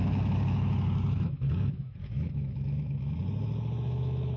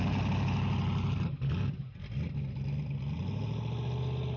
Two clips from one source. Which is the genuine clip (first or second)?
second